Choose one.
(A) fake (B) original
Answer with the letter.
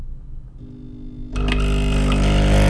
B